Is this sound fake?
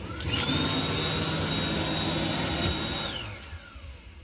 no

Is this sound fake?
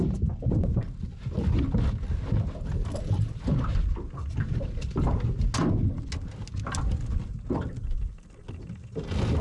no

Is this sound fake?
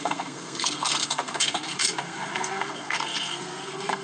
yes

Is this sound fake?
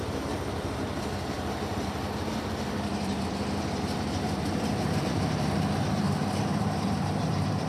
yes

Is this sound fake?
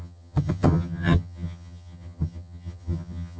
yes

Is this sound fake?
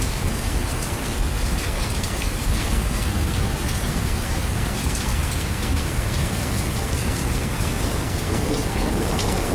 yes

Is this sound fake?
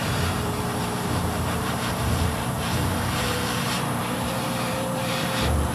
yes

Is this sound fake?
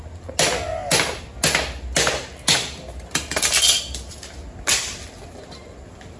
no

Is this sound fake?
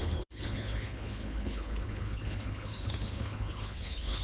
yes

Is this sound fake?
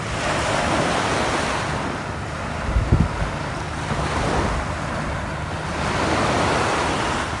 no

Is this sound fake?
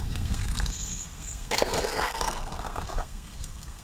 yes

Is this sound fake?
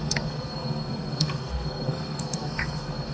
yes